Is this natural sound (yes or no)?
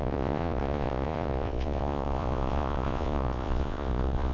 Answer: no